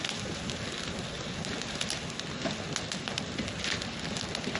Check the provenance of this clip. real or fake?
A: real